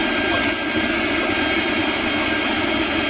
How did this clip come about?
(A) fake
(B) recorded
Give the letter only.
B